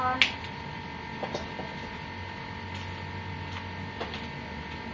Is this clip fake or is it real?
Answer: real